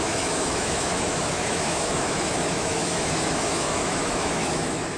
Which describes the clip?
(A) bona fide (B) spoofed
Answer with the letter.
B